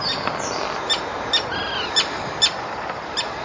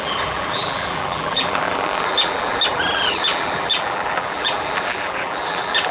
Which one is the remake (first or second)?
second